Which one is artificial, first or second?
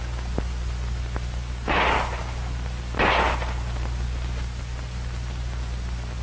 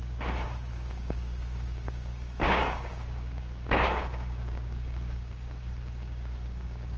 second